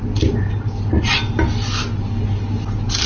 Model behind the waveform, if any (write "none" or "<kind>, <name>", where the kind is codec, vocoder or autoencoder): none